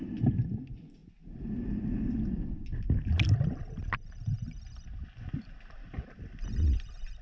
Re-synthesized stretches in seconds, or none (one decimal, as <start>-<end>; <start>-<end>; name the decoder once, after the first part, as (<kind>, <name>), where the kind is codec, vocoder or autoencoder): none